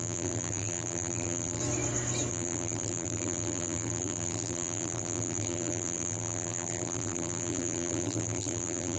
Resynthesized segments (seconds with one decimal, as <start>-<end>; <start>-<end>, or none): 0.0-1.6; 2.3-9.0